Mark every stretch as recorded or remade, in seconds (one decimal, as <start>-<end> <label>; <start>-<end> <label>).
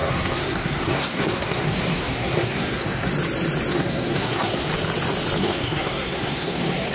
0.0-3.1 remade; 3.1-3.7 recorded; 3.7-4.7 remade; 4.7-5.4 recorded; 5.4-6.9 remade